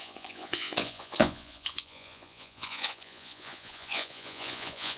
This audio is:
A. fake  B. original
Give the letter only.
A